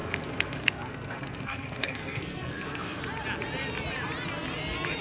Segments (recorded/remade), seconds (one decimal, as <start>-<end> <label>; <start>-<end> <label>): 0.0-3.0 remade; 3.0-5.0 recorded